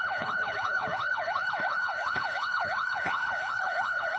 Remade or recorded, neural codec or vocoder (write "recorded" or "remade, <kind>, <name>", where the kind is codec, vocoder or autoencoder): remade, codec, HILCodec